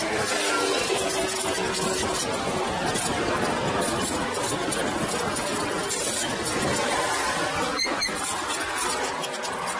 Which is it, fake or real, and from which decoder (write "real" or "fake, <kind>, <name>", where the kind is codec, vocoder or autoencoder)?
real